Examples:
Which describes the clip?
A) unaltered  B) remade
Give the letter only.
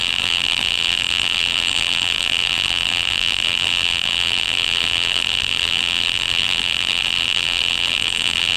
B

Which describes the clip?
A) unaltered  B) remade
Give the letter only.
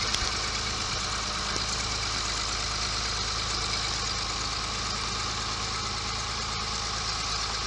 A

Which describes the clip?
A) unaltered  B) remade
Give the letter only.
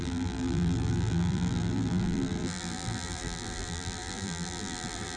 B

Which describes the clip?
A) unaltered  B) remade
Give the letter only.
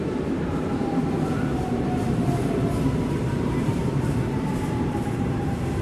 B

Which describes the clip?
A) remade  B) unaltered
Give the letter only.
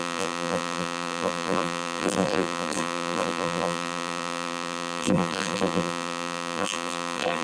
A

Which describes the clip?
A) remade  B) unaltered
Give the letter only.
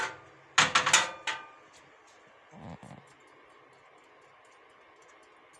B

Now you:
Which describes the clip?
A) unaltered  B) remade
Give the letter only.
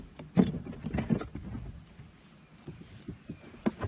A